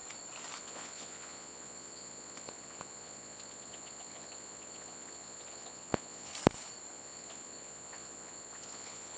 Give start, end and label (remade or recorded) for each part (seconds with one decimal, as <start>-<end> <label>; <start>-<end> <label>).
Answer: 0.0-0.6 recorded; 0.6-6.3 remade; 6.3-6.9 recorded; 6.9-9.2 remade